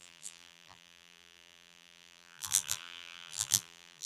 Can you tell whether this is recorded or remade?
remade